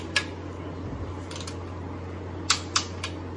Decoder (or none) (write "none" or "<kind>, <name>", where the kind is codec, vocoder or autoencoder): none